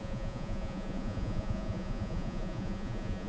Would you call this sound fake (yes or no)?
yes